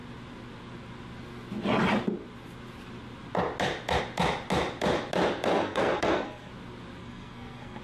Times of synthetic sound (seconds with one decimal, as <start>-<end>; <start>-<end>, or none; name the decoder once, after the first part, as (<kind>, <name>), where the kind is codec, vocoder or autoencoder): 5.5-6.5 (codec, SNAC); 7.0-7.8